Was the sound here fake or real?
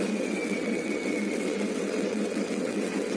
fake